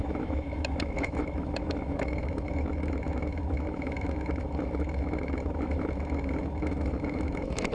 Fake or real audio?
fake